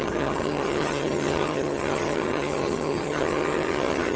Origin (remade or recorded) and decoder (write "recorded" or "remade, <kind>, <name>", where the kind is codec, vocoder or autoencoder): remade, vocoder, HiFi-GAN